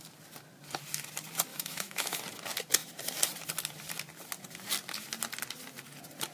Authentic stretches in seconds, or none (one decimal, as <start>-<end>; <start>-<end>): 0.0-1.5; 2.2-6.3